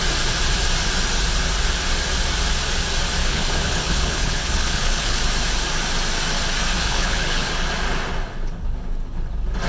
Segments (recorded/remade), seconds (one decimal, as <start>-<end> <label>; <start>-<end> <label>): 0.0-3.2 recorded; 3.2-5.2 remade; 5.2-6.8 recorded; 6.8-7.5 remade; 7.5-9.7 recorded